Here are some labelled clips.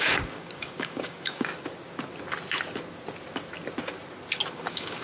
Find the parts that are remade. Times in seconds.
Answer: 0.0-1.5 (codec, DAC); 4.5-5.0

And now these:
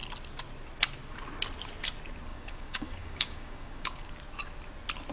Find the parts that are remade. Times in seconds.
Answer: 2.3-4.1 (codec, DAC)

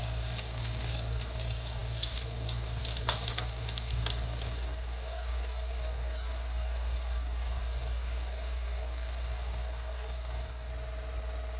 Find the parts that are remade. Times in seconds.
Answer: 0.0-10.7 (codec, DAC)